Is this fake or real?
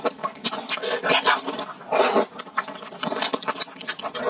real